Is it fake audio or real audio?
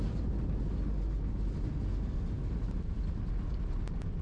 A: real